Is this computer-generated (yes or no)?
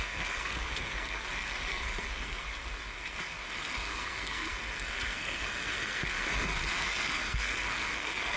yes